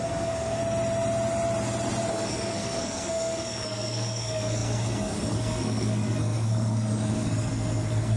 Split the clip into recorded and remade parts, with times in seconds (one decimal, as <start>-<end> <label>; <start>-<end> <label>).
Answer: 0.0-0.6 remade; 0.6-2.1 recorded; 2.1-8.2 remade